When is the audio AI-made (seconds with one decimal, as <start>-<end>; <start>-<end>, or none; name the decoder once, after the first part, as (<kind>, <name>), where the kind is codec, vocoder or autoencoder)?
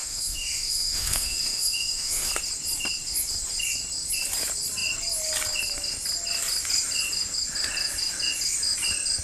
0.0-2.3 (autoencoder, DAC-VAE)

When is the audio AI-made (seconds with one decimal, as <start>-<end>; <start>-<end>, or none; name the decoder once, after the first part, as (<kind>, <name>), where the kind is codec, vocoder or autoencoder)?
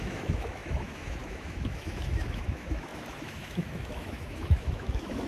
0.0-5.3 (autoencoder, DAC-VAE)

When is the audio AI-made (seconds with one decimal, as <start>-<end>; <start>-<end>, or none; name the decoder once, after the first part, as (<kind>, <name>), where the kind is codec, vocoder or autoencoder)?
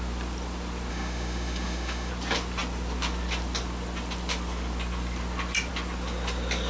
0.9-2.1 (autoencoder, DAC-VAE)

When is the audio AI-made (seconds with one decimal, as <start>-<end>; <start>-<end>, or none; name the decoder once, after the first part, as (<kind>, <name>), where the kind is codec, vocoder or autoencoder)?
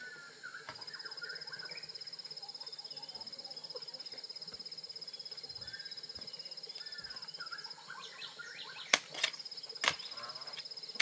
none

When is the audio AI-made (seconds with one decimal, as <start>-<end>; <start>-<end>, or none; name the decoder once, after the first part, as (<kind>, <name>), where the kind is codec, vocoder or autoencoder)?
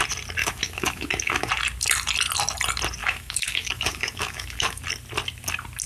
0.4-1.5 (autoencoder, DAC-VAE); 3.0-4.8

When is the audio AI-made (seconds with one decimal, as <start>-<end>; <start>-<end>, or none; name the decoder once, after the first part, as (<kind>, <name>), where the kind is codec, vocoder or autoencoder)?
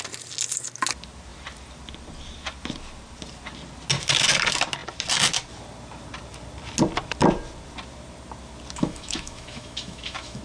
8.8-10.4 (autoencoder, DAC-VAE)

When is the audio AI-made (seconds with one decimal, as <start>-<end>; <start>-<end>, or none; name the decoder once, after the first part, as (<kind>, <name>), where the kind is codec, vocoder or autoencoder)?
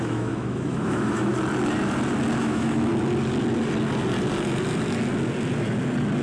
0.0-1.3 (autoencoder, DAC-VAE); 2.4-2.9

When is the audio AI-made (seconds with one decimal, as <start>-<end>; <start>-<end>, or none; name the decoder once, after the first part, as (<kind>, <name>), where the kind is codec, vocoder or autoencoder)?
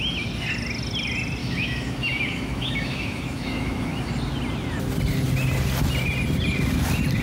1.4-4.1 (autoencoder, DAC-VAE)